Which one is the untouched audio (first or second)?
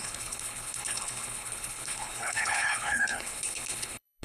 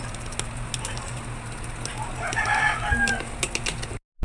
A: second